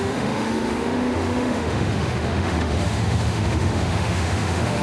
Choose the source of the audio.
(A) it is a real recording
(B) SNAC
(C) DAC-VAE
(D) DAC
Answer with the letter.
C